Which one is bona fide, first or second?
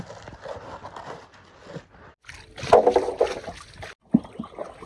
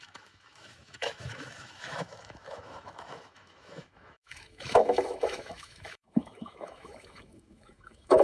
first